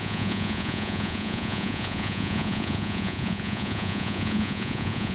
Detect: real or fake fake